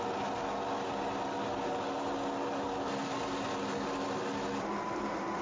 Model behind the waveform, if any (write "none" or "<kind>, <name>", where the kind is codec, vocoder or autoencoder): none